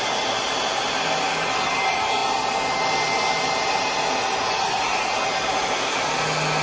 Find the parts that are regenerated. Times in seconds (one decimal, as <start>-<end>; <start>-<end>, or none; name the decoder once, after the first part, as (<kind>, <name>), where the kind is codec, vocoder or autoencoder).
none